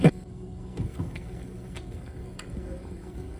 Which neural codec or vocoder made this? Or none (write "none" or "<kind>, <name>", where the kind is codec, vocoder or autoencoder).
codec, SNAC